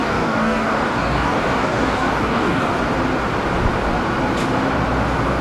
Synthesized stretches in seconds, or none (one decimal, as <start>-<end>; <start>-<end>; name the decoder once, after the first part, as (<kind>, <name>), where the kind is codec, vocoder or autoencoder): 0.0-2.7 (codec, DAC)